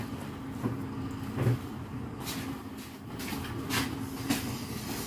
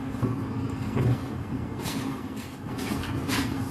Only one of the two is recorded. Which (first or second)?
first